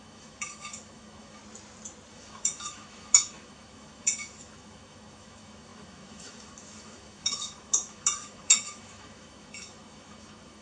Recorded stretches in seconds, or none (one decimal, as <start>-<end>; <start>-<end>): 1.4-2.1

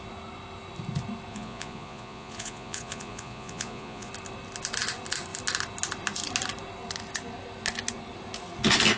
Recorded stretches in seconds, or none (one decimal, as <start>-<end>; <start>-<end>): 0.0-1.3; 4.1-9.0